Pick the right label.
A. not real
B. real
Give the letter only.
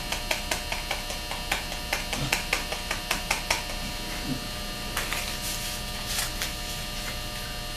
B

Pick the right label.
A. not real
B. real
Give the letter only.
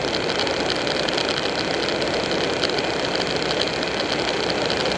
B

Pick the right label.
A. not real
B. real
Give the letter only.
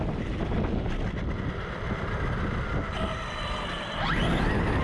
B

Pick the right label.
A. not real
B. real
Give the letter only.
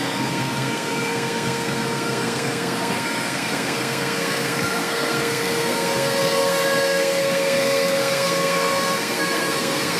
A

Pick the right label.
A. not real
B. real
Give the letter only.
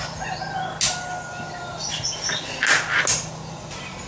B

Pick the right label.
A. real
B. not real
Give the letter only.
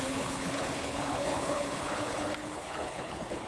B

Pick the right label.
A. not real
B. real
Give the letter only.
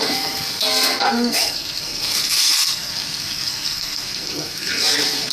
A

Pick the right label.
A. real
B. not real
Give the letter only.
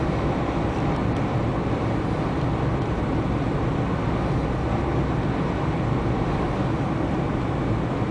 A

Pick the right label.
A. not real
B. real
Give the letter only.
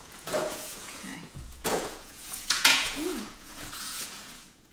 A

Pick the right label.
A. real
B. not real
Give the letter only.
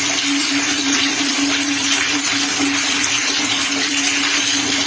B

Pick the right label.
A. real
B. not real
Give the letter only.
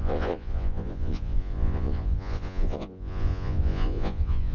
B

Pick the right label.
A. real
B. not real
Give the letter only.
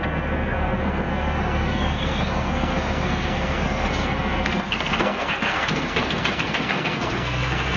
B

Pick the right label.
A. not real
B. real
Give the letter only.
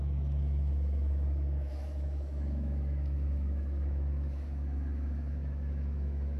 A